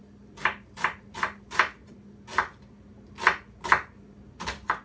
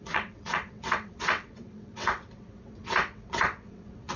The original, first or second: first